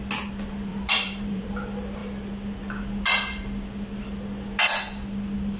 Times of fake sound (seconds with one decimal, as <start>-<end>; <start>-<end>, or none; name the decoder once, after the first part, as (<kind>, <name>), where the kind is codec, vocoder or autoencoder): 0.7-1.5 (vocoder, BigVGAN v2)